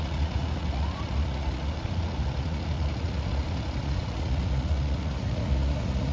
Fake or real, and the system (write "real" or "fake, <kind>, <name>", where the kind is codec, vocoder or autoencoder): fake, vocoder, Vocos